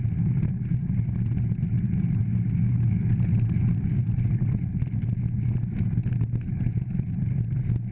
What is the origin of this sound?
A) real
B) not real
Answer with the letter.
A